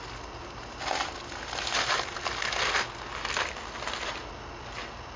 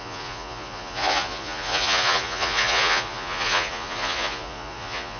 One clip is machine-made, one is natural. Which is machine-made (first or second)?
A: second